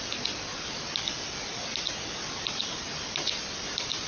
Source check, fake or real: real